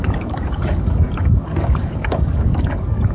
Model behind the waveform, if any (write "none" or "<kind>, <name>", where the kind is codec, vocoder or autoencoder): codec, DAC